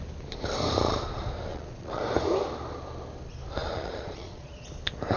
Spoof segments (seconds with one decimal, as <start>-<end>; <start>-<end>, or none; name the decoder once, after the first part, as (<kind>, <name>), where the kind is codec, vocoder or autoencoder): 1.5-2.0 (vocoder, Vocos); 3.6-4.7